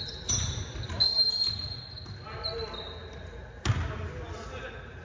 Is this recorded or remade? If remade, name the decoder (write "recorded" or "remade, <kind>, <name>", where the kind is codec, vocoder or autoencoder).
recorded